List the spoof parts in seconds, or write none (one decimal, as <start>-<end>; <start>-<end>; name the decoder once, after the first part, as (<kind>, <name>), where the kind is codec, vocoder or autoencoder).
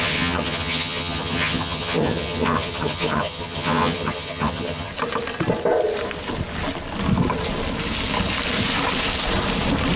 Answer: 0.0-4.9 (vocoder, HiFi-GAN)